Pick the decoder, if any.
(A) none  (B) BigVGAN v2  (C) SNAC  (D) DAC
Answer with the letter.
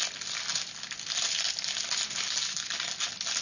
A